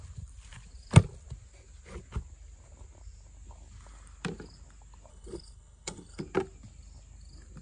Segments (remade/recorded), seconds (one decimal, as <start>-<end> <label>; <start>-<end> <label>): 0.0-5.1 recorded; 5.1-6.2 remade; 6.2-7.6 recorded